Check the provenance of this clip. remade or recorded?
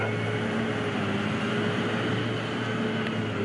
recorded